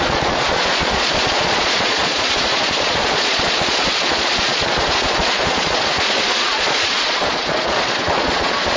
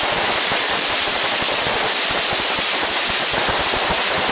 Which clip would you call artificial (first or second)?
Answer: first